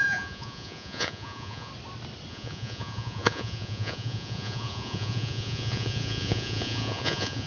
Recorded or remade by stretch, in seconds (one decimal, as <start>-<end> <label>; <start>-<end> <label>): 0.0-1.7 remade; 1.7-2.3 recorded; 2.3-7.5 remade